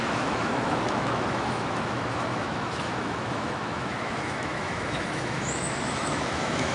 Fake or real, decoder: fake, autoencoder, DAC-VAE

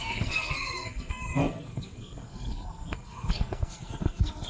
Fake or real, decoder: fake, codec, SNAC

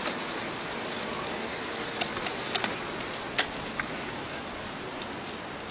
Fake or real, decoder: real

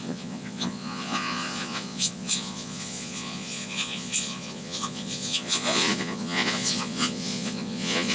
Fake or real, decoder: fake, vocoder, Vocos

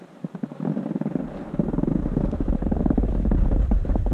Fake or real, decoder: real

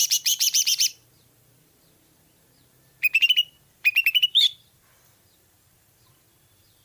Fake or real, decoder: fake, vocoder, BigVGAN v2